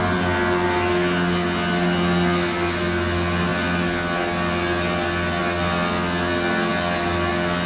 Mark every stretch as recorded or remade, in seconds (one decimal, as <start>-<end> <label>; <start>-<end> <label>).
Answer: 0.0-7.7 recorded